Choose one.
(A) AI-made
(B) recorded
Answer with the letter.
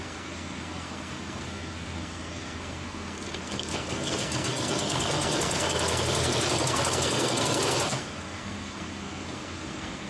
A